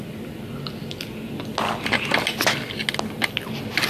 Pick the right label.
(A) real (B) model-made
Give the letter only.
A